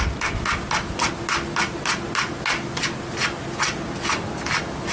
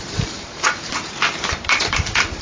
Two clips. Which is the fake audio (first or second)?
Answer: second